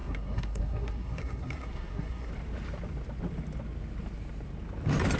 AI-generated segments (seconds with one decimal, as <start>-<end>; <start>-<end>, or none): 0.0-2.3